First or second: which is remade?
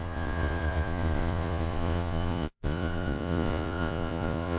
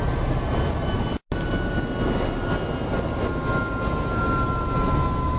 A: first